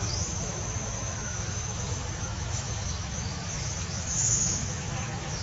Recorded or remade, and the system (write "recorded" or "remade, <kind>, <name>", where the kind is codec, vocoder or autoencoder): remade, autoencoder, DAC-VAE